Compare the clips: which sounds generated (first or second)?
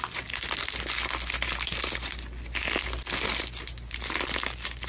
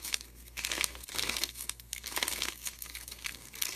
second